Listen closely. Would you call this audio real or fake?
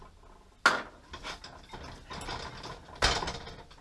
real